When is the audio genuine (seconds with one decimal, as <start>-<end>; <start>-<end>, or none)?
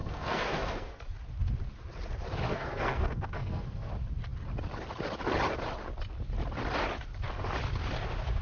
1.0-2.5; 3.9-8.4